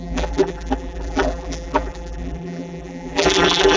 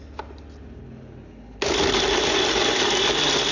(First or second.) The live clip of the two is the second